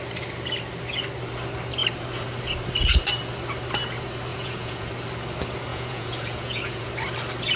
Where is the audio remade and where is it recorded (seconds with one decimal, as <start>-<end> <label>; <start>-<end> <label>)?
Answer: 0.0-4.3 recorded; 4.3-4.9 remade; 4.9-5.7 recorded; 5.7-6.9 remade; 6.9-7.6 recorded